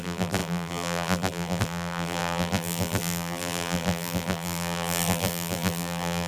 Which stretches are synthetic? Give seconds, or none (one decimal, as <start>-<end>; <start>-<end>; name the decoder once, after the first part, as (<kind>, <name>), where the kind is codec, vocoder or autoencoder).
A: 0.0-6.3 (vocoder, BigVGAN v2)

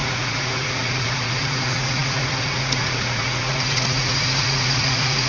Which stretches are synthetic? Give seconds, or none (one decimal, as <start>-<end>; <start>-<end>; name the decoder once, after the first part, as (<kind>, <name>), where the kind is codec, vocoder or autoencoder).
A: 0.0-5.3 (vocoder, Vocos)

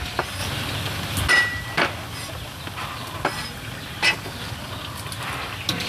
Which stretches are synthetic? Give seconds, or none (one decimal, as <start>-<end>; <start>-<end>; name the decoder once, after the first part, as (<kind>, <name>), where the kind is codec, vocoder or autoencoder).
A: none